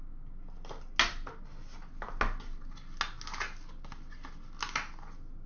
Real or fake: real